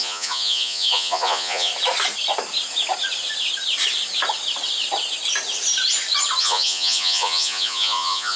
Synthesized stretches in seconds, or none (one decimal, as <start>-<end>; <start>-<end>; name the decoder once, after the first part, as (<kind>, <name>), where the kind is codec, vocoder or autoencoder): 0.0-1.7 (vocoder, Vocos); 6.4-8.4